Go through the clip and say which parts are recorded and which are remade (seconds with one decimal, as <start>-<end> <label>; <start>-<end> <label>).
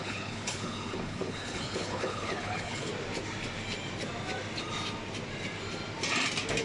0.0-2.9 remade; 2.9-6.6 recorded